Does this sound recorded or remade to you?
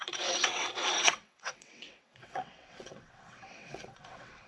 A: remade